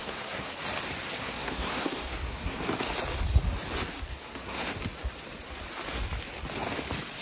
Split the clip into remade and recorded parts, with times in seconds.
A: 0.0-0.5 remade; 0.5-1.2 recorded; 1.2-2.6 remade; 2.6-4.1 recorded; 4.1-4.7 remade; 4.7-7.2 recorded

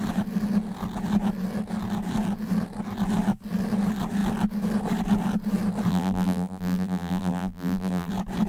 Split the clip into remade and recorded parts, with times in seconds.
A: 0.0-5.9 recorded; 5.9-8.1 remade; 8.1-8.5 recorded

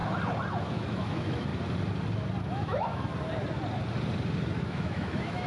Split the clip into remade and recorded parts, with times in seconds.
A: 0.0-0.6 recorded; 0.6-1.5 remade; 1.5-2.4 recorded; 2.4-3.1 remade; 3.1-4.6 recorded; 4.6-5.5 remade

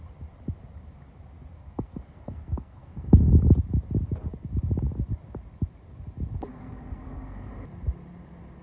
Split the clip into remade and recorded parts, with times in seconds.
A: 0.0-1.6 recorded; 1.6-3.3 remade; 3.3-6.5 recorded; 6.5-7.5 remade; 7.5-8.6 recorded

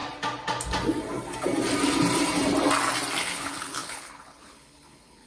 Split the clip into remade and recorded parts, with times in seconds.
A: 0.0-3.2 recorded; 3.2-5.3 remade

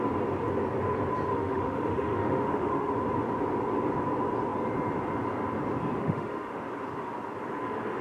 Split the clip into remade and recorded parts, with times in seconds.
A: 0.0-1.3 recorded; 1.3-2.9 remade; 2.9-6.0 recorded; 6.0-6.6 remade; 6.6-8.0 recorded

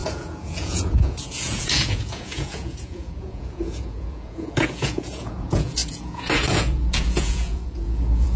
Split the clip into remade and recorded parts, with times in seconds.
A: 0.0-8.4 remade